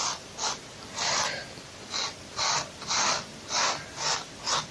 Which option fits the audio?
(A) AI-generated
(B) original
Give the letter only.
B